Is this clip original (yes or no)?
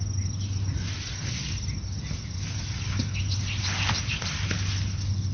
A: yes